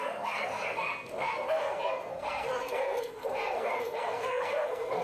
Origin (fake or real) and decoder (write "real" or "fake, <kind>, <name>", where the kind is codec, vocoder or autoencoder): fake, codec, SNAC